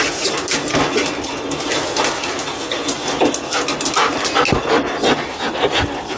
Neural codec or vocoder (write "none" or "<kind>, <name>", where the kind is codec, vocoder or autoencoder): none